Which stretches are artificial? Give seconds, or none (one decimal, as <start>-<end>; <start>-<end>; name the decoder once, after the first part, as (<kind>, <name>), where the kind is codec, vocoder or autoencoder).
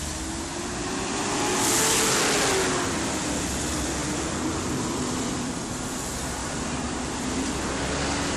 4.0-6.0 (vocoder, BigVGAN v2); 6.4-7.4